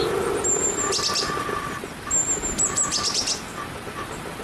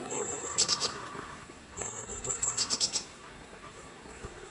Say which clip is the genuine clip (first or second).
first